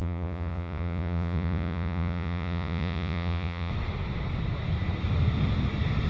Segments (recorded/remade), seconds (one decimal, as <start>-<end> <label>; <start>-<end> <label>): 0.0-3.7 remade; 3.7-6.1 recorded